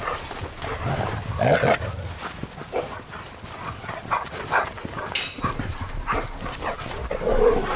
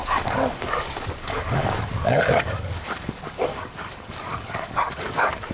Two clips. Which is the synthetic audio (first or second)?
second